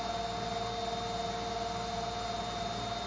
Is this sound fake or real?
real